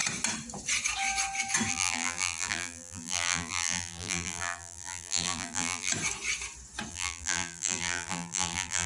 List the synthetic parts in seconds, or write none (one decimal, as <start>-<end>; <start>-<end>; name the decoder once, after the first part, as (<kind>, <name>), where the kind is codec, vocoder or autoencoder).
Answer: 1.7-5.9 (vocoder, BigVGAN v2); 6.9-8.9